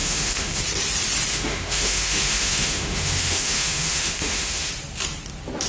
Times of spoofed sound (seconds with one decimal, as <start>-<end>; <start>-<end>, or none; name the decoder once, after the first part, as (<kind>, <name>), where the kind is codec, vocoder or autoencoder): 0.0-0.6 (autoencoder, DAC-VAE); 1.3-4.7